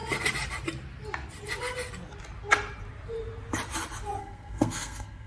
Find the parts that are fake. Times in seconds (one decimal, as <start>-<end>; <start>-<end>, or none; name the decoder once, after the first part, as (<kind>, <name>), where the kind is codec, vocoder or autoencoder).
4.2-5.3 (codec, SNAC)